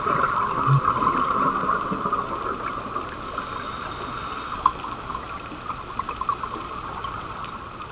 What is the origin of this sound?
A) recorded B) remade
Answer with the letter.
A